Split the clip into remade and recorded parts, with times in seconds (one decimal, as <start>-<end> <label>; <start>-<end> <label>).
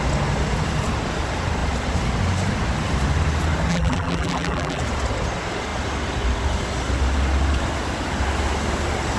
0.0-3.7 recorded; 3.7-4.8 remade; 4.8-9.2 recorded